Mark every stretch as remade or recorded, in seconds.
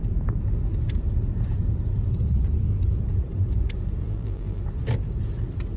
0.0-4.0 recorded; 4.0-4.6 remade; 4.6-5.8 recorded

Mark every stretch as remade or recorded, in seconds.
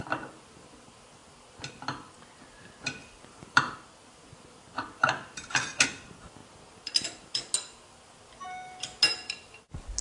0.0-3.0 recorded; 3.0-3.7 remade; 3.7-10.0 recorded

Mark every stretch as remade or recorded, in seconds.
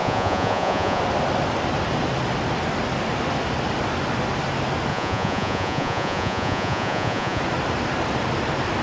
0.0-1.0 remade; 1.0-4.9 recorded; 4.9-7.4 remade; 7.4-8.8 recorded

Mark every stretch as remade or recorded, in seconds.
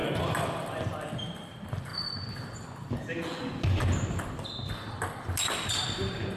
0.0-0.8 remade; 0.8-6.4 recorded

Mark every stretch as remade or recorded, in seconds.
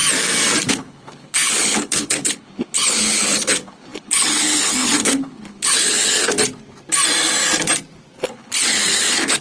0.0-0.7 recorded; 0.7-6.3 remade; 6.3-8.2 recorded; 8.2-9.4 remade